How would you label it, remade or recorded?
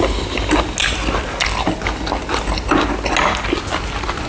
recorded